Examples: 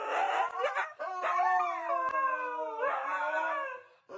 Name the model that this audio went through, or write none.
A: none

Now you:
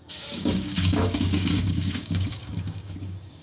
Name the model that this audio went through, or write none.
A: codec, DAC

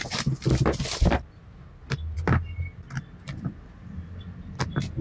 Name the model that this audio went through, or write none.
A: none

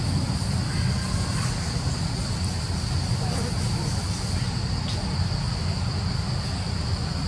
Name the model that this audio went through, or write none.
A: none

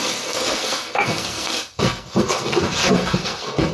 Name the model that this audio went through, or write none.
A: codec, SNAC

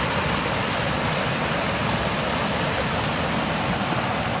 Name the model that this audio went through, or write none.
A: none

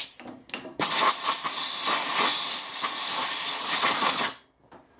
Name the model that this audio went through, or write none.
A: none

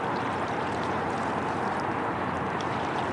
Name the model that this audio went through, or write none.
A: vocoder, BigVGAN v2